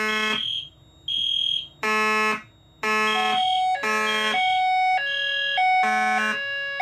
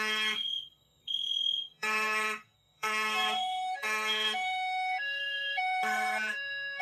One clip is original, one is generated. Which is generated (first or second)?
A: second